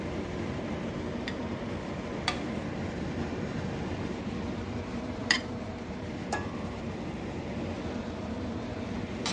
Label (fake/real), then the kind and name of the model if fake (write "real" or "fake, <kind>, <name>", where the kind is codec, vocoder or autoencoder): fake, vocoder, BigVGAN v2